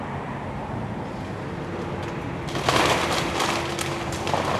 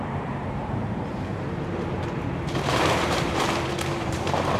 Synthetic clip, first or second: second